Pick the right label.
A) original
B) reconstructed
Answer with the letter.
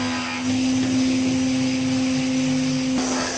A